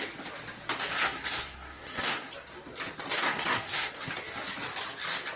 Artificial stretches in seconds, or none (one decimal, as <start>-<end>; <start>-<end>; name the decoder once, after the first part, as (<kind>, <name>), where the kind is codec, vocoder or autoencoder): 0.9-2.3 (codec, SNAC); 3.2-4.1